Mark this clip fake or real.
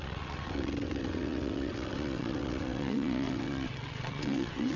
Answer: fake